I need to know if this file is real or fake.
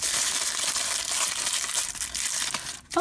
real